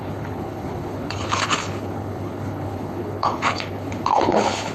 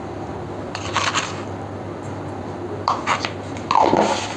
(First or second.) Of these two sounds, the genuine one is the second